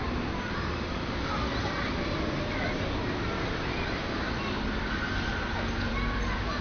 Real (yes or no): no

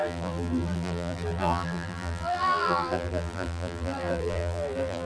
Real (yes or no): no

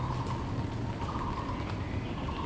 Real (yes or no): yes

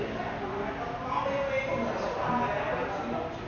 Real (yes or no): yes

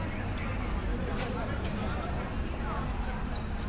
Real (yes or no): yes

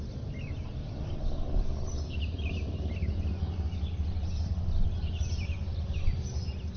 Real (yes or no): yes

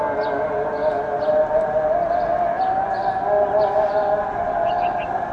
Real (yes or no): yes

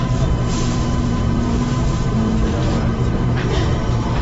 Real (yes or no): no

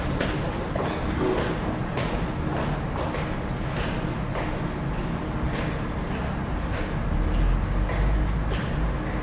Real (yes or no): yes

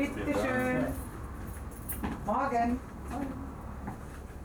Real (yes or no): yes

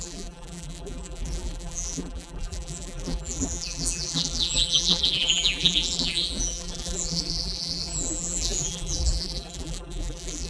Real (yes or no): no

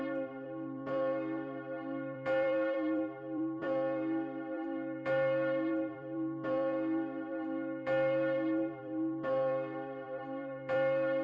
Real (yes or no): no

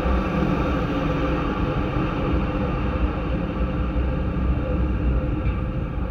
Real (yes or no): no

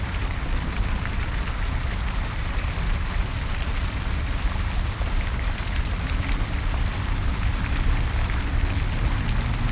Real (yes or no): no